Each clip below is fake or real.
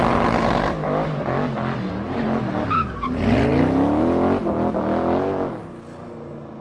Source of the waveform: real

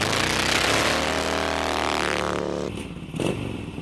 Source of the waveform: real